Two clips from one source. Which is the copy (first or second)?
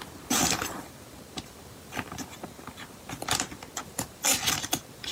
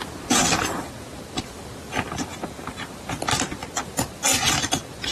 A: first